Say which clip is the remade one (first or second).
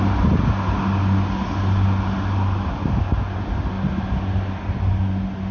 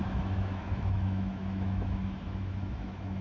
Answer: second